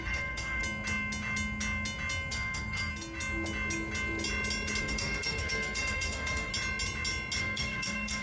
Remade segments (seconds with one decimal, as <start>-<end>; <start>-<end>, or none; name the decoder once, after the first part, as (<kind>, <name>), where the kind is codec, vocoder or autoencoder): 0.0-0.6 (codec, SNAC); 2.3-2.9; 4.8-6.5; 7.4-8.2